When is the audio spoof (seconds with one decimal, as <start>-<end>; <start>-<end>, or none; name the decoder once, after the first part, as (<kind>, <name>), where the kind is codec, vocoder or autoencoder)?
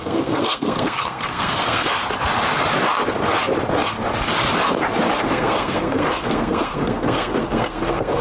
0.0-1.9 (codec, SNAC); 5.3-8.2